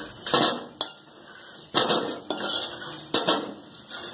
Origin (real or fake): real